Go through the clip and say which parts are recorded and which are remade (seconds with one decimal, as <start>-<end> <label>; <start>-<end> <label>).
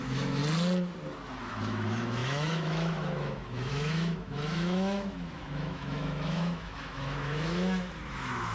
0.0-0.4 remade; 0.4-1.4 recorded; 1.4-8.5 remade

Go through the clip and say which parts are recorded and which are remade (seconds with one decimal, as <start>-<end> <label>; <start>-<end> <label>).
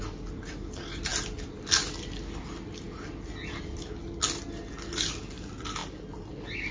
0.0-6.7 recorded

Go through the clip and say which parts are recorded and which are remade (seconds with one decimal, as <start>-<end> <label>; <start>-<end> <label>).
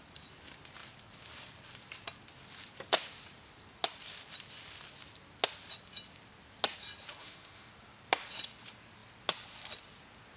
0.0-7.2 recorded; 7.2-7.7 remade; 7.7-10.4 recorded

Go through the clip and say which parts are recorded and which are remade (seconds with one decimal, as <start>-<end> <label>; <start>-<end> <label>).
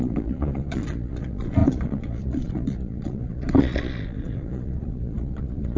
0.0-5.8 remade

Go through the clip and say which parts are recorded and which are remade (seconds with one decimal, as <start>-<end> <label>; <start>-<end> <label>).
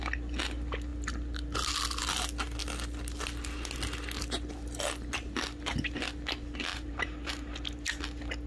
0.0-6.7 recorded; 6.7-7.3 remade; 7.3-8.5 recorded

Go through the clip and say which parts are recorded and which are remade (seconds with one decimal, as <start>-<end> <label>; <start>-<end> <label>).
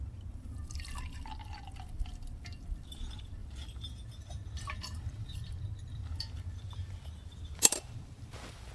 0.0-8.7 remade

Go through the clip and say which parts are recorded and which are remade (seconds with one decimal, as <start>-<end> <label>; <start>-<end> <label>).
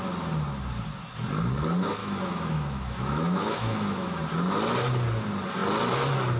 0.0-2.0 recorded; 2.0-4.2 remade; 4.2-6.4 recorded